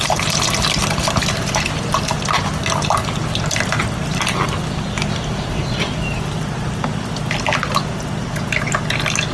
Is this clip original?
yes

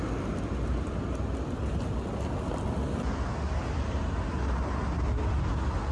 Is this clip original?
yes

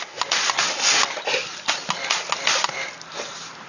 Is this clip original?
yes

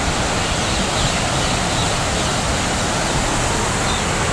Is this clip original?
no